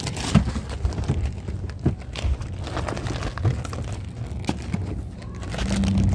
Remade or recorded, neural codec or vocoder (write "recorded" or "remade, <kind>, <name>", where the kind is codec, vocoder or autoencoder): recorded